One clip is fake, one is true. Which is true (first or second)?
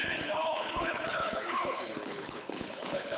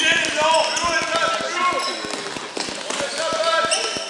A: second